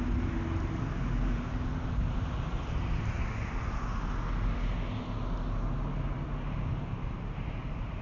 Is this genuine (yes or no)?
yes